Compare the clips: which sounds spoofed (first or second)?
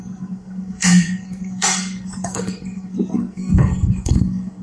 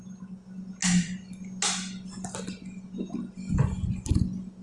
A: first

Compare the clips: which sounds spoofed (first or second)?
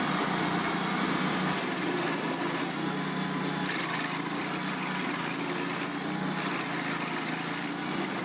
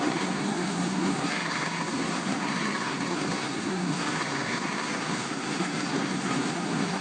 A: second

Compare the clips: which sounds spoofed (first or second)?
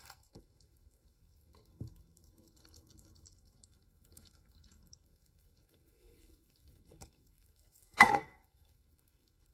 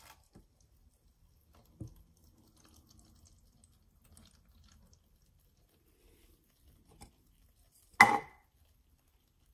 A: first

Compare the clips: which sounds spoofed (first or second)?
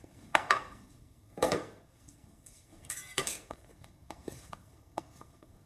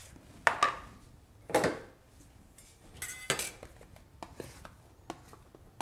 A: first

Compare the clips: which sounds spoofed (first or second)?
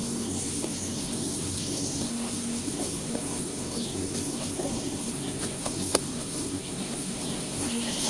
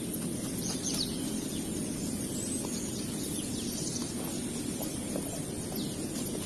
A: first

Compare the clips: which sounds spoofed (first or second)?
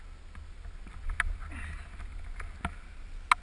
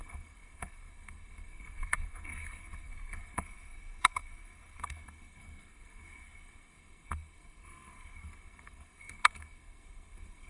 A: second